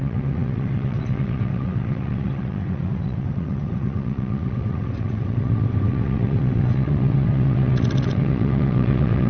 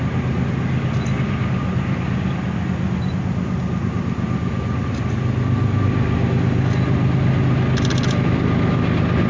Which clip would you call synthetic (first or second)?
first